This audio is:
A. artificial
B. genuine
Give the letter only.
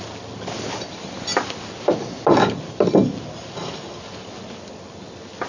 B